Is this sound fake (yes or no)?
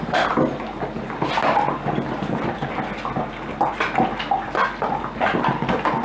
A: no